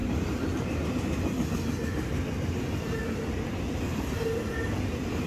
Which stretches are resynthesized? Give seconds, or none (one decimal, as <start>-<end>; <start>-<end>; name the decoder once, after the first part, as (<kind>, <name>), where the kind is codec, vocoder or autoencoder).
none